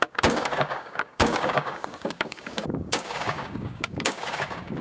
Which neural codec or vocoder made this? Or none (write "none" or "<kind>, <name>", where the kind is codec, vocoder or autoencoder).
codec, DAC